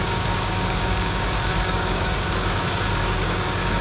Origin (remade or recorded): remade